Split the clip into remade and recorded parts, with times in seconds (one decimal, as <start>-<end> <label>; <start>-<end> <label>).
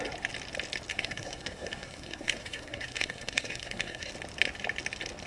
0.0-0.9 recorded; 0.9-4.1 remade; 4.1-5.3 recorded